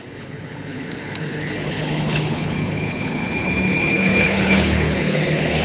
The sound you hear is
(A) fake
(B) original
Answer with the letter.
A